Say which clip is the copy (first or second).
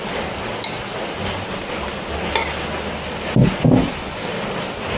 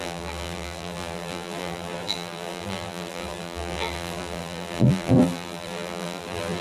second